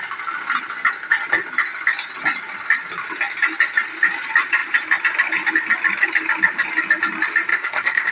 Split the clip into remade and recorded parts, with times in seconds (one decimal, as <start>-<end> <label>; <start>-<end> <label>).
0.0-7.5 recorded; 7.5-8.1 remade